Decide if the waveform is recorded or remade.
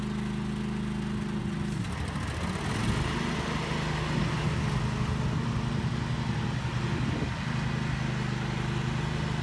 recorded